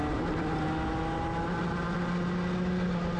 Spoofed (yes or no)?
no